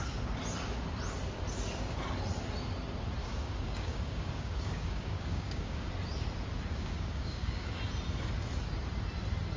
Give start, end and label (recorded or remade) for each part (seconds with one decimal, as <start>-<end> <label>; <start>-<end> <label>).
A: 0.0-3.2 recorded; 3.2-5.9 remade; 5.9-6.7 recorded; 6.7-7.8 remade; 7.8-9.6 recorded